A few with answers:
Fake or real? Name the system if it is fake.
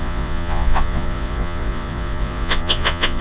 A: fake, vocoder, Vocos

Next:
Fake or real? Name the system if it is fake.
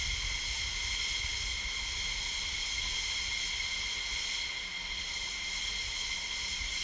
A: real